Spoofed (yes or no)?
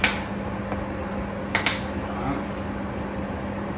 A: no